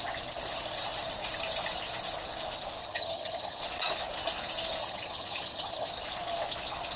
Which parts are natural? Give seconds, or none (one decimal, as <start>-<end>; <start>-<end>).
0.0-2.8; 3.6-4.8; 5.9-7.0